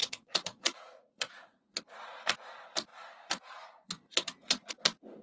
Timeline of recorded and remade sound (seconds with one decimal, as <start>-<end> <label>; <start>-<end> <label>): 0.0-1.8 remade; 1.8-2.9 recorded; 2.9-4.7 remade; 4.7-5.2 recorded